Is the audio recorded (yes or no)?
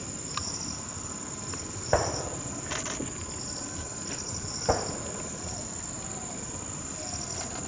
yes